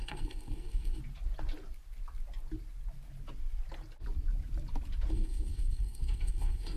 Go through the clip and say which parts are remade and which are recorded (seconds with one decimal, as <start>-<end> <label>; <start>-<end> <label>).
0.0-1.0 remade; 1.0-5.1 recorded; 5.1-6.8 remade